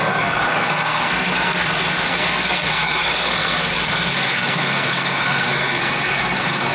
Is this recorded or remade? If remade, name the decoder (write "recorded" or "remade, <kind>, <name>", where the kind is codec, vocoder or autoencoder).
remade, codec, SNAC